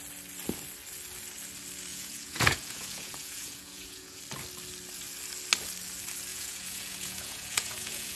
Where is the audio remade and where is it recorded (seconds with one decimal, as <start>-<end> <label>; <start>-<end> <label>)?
0.0-1.9 recorded; 1.9-4.2 remade; 4.2-6.3 recorded; 6.3-8.2 remade